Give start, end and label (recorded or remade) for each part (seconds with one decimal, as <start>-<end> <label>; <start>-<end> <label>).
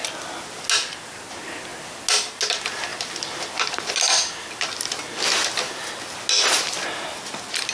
0.0-7.7 recorded